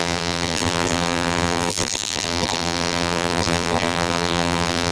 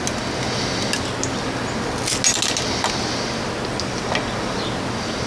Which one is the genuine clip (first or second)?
second